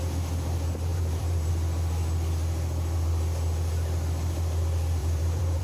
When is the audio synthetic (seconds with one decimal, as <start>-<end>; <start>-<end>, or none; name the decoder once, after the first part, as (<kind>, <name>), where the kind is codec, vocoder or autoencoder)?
0.9-1.5 (vocoder, BigVGAN v2); 5.0-5.6